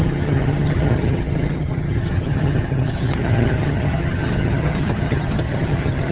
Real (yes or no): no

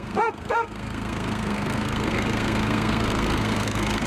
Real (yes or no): no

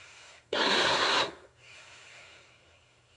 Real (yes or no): no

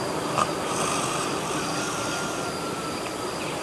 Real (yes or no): yes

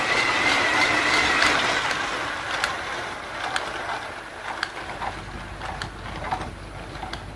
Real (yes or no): yes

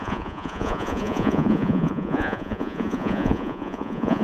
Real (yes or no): no